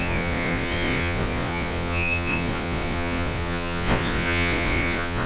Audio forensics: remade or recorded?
remade